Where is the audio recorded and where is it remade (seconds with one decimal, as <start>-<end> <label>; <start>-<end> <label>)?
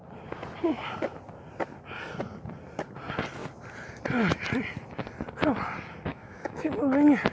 0.0-6.1 recorded; 6.1-6.7 remade; 6.7-7.3 recorded